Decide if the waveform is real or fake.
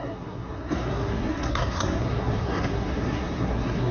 fake